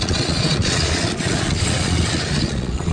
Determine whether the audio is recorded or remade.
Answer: remade